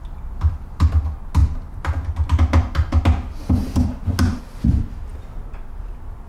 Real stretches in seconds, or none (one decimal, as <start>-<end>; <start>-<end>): 0.0-6.3